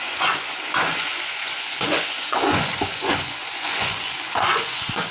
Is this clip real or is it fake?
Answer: fake